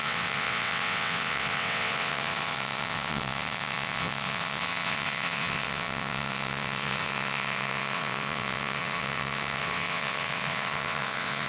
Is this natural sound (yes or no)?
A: no